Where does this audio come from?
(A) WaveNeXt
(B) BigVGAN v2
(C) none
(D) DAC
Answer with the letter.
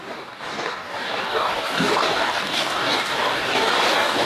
D